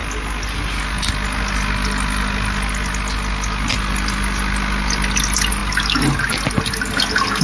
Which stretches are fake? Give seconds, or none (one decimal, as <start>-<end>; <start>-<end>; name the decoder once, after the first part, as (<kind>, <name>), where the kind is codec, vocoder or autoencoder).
none

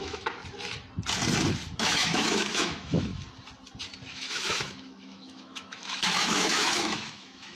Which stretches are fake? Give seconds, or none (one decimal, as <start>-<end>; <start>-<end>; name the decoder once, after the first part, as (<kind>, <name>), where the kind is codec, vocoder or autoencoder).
0.0-0.4 (autoencoder, DAC-VAE); 1.8-3.1; 4.1-7.5

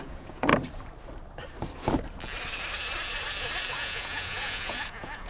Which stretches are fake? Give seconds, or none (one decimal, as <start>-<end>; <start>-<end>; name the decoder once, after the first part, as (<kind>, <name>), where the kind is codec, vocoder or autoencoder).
0.0-0.5 (vocoder, Vocos); 3.7-5.3

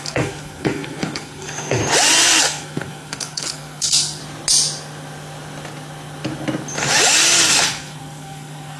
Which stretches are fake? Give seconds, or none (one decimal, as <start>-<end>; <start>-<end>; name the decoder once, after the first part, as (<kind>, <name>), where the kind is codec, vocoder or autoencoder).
0.0-1.8 (codec, SNAC); 2.4-4.2; 7.6-8.8

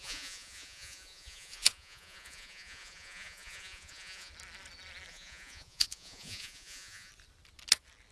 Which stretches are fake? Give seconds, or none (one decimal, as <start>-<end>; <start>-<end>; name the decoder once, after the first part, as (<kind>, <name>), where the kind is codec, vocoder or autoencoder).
0.0-4.3 (vocoder, Vocos); 5.1-7.1

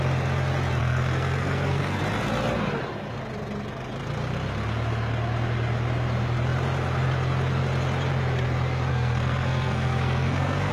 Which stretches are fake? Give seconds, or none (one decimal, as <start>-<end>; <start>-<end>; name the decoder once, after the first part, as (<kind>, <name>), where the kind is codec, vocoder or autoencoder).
0.8-2.0 (codec, SNAC); 8.9-10.7

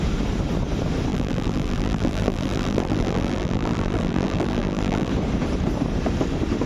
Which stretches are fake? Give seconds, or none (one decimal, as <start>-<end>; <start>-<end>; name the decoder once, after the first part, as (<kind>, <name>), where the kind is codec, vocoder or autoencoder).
1.1-5.1 (vocoder, BigVGAN v2)

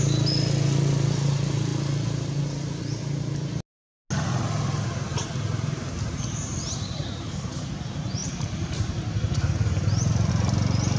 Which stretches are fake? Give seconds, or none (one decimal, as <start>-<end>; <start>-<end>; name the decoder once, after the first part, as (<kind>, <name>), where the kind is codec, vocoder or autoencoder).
8.2-10.3 (vocoder, BigVGAN v2)